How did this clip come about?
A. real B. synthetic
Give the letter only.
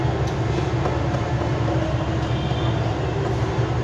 A